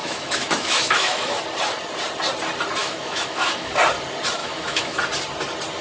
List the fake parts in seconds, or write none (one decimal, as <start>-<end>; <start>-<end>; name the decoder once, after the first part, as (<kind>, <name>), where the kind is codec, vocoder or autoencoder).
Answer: 0.0-1.4 (autoencoder, DAC-VAE); 2.8-3.7; 4.4-5.0

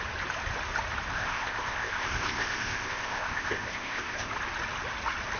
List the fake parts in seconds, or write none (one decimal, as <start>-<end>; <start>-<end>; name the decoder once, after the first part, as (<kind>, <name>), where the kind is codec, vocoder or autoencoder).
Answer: 1.1-4.3 (codec, ZipCodec)

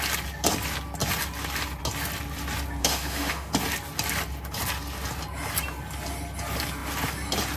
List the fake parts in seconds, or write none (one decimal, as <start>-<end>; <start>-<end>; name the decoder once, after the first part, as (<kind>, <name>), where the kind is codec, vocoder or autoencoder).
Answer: 2.8-3.5 (autoencoder, DAC-VAE)

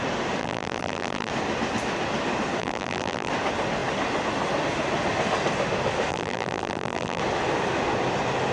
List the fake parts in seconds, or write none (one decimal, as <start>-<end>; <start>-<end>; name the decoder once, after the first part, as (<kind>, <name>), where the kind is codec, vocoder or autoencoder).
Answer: 0.4-1.3 (vocoder, BigVGAN v2); 2.6-3.3; 6.1-7.2

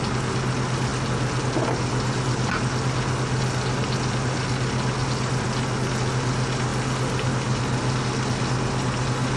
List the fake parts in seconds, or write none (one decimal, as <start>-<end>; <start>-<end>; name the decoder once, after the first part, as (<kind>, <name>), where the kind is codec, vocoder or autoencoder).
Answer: none